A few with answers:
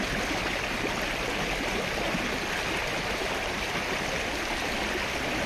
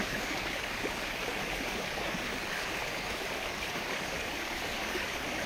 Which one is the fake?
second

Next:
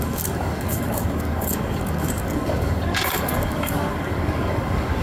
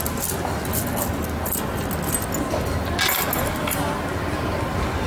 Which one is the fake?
first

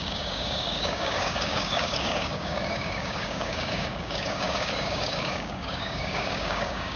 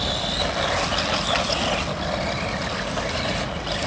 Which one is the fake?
first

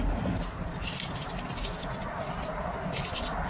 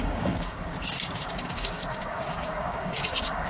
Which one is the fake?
second